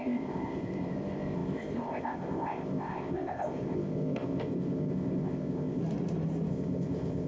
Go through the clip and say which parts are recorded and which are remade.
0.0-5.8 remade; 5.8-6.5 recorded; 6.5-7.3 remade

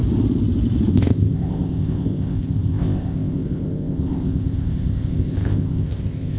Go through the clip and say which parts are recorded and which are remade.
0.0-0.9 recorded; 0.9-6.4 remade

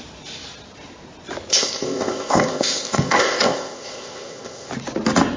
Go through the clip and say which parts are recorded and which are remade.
0.0-1.5 recorded; 1.5-4.7 remade; 4.7-5.4 recorded

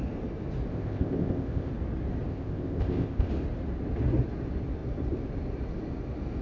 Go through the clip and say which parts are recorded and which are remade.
0.0-0.7 recorded; 0.7-1.7 remade; 1.7-2.3 recorded; 2.3-3.3 remade; 3.3-6.4 recorded

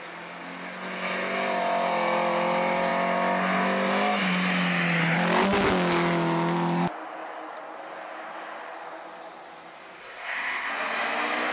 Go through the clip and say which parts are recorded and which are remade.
0.0-10.0 recorded; 10.0-10.7 remade; 10.7-11.5 recorded

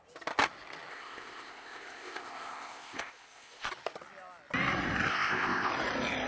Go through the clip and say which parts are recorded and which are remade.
0.0-0.9 recorded; 0.9-3.7 remade; 3.7-5.1 recorded; 5.1-5.7 remade; 5.7-6.3 recorded

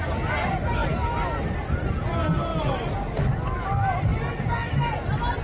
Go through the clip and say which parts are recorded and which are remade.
0.0-5.4 recorded

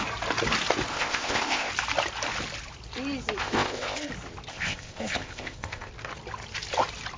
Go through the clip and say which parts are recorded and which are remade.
0.0-0.9 recorded; 0.9-1.7 remade; 1.7-3.4 recorded; 3.4-4.1 remade; 4.1-4.5 recorded; 4.5-5.9 remade; 5.9-7.2 recorded